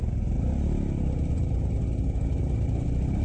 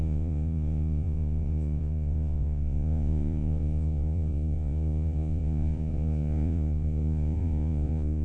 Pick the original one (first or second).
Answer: first